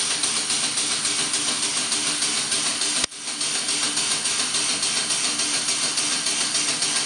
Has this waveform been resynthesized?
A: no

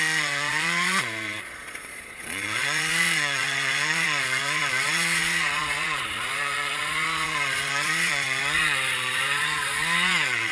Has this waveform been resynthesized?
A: yes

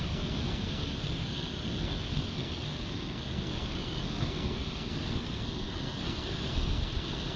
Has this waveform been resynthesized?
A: yes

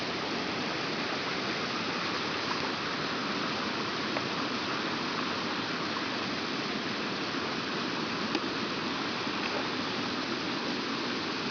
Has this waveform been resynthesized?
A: no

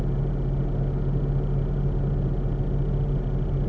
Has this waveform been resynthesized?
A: no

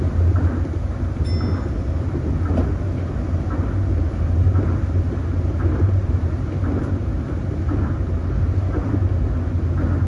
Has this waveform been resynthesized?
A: no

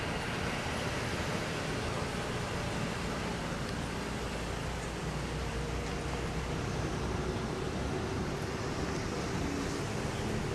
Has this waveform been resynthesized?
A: no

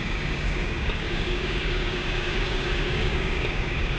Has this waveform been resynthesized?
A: yes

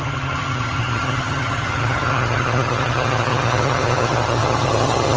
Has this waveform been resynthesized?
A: yes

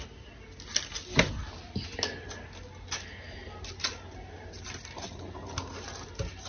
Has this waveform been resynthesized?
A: no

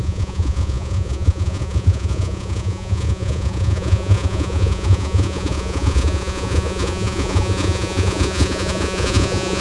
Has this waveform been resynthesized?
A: yes